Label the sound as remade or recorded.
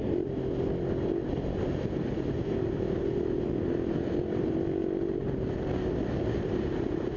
recorded